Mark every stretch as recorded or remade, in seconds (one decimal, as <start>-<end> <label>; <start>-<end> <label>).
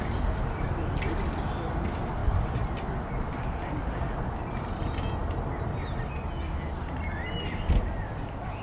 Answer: 0.0-8.6 recorded